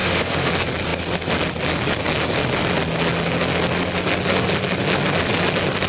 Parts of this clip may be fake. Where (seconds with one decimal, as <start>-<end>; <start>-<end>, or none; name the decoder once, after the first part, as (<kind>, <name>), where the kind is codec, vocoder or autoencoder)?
0.0-0.5 (autoencoder, DAC-VAE)